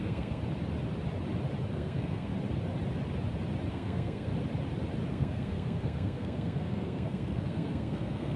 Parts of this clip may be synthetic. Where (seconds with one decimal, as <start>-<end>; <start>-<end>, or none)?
0.0-0.4; 1.7-2.3; 3.7-4.3; 5.1-8.4